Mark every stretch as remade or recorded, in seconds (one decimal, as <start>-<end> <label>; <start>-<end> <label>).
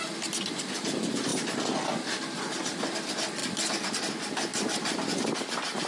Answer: 0.0-3.4 recorded; 3.4-4.1 remade; 4.1-4.5 recorded; 4.5-5.3 remade; 5.3-5.9 recorded